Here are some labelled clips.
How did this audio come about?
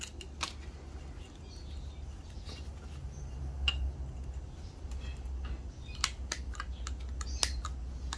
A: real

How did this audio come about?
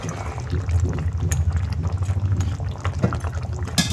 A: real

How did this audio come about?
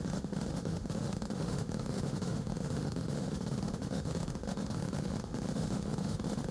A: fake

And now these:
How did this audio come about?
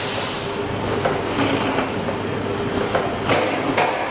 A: real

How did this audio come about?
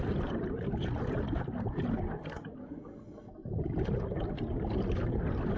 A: real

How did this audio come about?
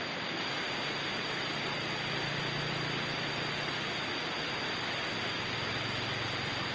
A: real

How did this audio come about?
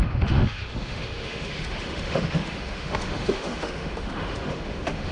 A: fake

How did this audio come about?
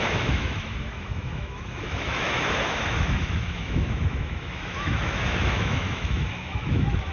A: fake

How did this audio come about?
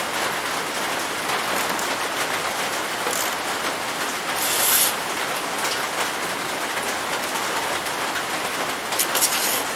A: real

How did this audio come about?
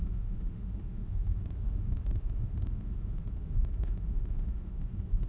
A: fake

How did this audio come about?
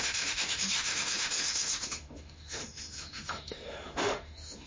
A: fake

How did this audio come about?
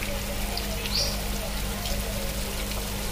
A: real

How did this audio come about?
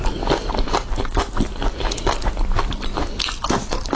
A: real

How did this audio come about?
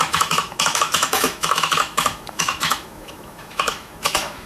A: fake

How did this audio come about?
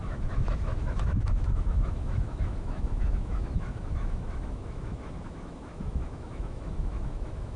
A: fake